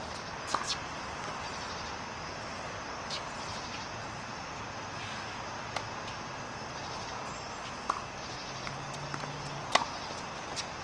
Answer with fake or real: real